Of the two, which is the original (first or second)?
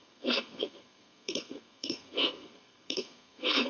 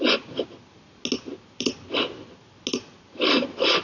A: second